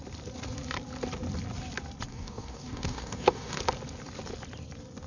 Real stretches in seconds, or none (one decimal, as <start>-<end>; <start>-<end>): 0.0-2.1; 3.6-5.1